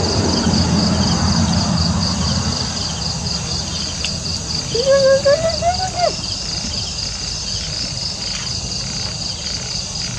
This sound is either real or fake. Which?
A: real